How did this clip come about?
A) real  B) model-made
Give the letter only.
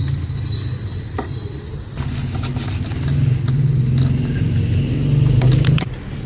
A